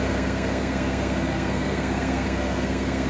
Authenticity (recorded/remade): remade